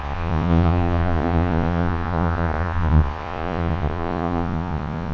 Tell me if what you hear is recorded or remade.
remade